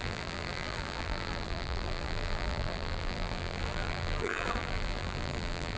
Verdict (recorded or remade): remade